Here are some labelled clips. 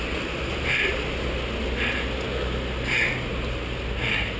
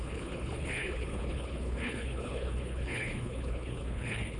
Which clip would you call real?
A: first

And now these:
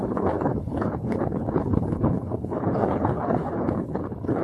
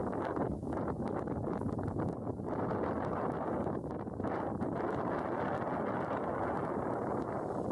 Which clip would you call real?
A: second